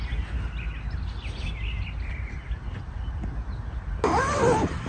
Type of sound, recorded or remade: recorded